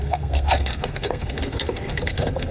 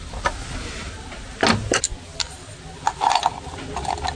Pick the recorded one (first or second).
second